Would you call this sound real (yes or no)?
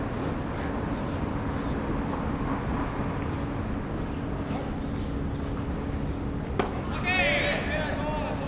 yes